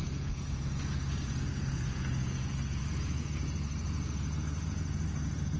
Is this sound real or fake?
fake